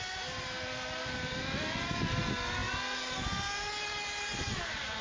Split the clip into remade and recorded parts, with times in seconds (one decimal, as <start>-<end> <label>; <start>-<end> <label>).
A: 0.0-5.0 recorded